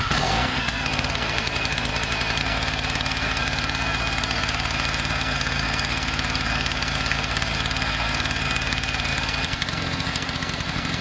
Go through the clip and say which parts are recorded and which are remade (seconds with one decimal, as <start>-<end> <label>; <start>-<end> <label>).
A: 0.0-1.9 remade; 1.9-2.4 recorded; 2.4-11.0 remade